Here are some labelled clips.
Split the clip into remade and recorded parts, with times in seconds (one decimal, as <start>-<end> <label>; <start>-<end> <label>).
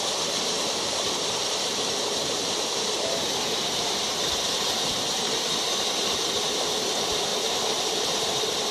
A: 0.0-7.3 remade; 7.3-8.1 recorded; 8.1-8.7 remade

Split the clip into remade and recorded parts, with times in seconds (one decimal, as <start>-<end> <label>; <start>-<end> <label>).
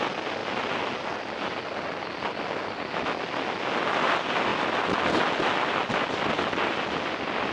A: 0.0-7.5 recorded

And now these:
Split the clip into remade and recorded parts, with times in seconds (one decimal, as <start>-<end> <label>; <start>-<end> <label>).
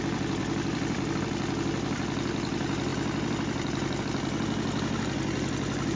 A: 0.0-0.4 recorded; 0.4-1.2 remade; 1.2-2.9 recorded; 2.9-4.0 remade; 4.0-6.0 recorded